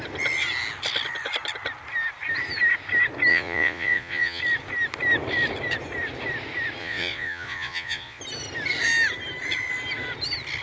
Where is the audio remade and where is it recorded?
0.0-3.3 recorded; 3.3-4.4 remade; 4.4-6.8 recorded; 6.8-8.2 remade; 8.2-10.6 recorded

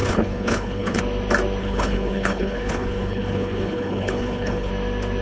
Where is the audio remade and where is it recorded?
0.0-1.0 remade; 1.0-1.6 recorded; 1.6-4.7 remade; 4.7-5.2 recorded

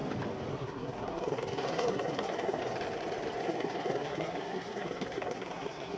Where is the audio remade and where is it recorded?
0.0-0.5 recorded; 0.5-2.6 remade; 2.6-3.4 recorded; 3.4-6.0 remade

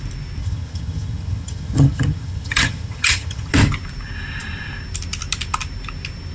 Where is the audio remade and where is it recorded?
0.0-0.4 recorded; 0.4-3.5 remade; 3.5-6.3 recorded